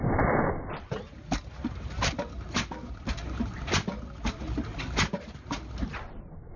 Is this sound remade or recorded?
recorded